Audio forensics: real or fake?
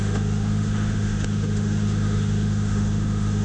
fake